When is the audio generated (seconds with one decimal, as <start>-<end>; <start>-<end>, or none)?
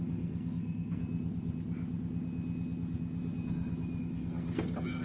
0.0-1.0; 4.0-5.0